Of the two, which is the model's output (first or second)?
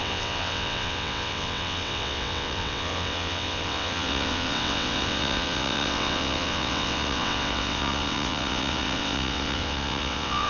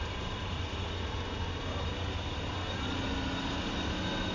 first